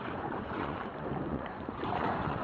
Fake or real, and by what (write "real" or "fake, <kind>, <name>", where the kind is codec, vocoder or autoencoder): fake, vocoder, Vocos